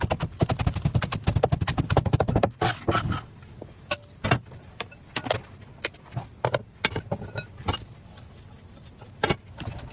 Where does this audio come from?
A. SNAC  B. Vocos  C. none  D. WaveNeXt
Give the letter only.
C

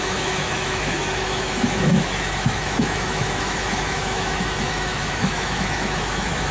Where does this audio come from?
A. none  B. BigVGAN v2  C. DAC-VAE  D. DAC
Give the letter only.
C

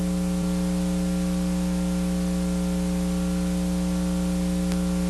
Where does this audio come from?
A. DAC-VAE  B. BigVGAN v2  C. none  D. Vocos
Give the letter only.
C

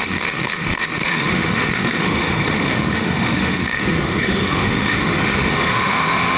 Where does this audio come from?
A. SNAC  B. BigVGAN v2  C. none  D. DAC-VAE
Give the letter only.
D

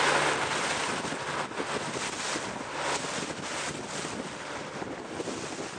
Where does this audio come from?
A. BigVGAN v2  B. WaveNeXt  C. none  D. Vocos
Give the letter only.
C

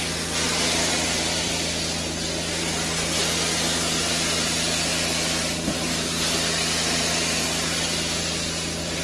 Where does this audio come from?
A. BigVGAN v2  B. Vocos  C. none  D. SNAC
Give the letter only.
C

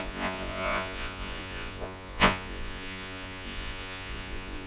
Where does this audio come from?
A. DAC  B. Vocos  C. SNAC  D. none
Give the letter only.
B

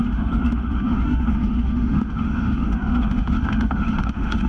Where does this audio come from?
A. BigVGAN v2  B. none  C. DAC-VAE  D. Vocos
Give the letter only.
C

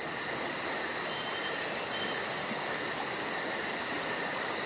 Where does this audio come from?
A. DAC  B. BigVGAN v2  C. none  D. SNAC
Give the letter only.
C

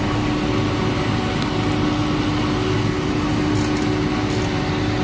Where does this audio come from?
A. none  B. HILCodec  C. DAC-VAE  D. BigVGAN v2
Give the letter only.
A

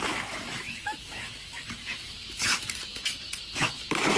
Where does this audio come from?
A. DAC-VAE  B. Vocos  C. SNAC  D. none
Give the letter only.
A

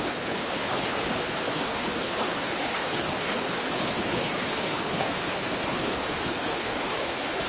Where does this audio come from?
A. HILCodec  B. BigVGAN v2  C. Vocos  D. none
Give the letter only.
A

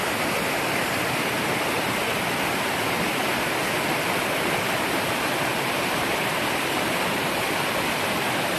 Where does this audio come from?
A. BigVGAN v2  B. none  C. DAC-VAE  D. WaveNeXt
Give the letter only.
B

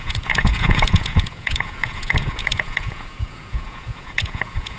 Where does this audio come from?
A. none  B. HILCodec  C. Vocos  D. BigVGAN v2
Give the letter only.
C